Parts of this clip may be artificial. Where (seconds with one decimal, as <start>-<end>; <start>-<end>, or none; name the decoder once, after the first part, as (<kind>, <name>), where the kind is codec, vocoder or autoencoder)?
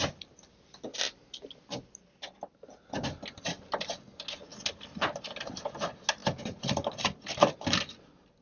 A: none